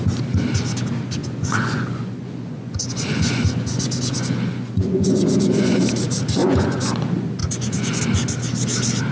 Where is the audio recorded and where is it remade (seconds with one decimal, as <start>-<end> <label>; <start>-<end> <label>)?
0.0-1.2 recorded; 1.2-5.8 remade; 5.8-6.4 recorded; 6.4-6.9 remade; 6.9-7.4 recorded; 7.4-8.0 remade; 8.0-9.1 recorded